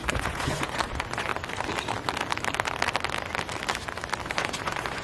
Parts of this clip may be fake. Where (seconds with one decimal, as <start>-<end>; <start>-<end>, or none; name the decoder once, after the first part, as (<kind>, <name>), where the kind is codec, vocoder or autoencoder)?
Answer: 0.0-1.3 (vocoder, Vocos); 4.3-5.0